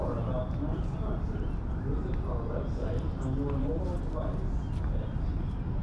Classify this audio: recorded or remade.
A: recorded